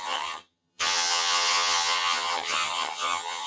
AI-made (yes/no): yes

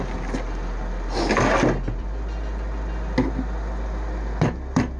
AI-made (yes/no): no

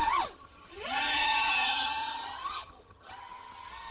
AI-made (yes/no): yes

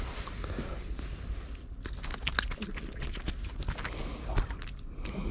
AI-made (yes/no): no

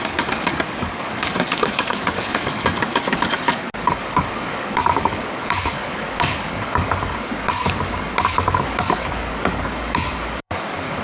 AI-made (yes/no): yes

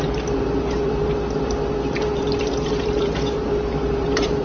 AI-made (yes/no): yes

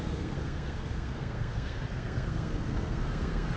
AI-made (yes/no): yes